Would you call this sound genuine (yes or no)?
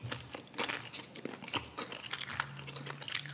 yes